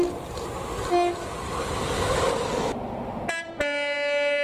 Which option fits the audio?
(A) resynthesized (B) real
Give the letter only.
B